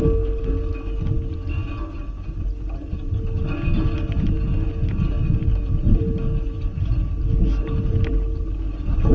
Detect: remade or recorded recorded